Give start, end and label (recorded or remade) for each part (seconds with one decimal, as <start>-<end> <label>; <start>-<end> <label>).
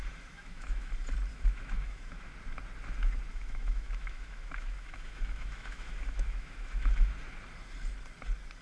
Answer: 0.0-0.9 remade; 0.9-1.3 recorded; 1.3-2.3 remade; 2.3-3.3 recorded; 3.3-7.1 remade; 7.1-8.6 recorded